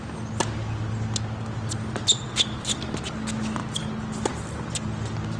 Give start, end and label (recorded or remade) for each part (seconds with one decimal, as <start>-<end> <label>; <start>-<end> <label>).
0.0-5.4 recorded